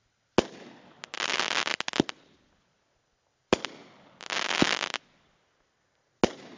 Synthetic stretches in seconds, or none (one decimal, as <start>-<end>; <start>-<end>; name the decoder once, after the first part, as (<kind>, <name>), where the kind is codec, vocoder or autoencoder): none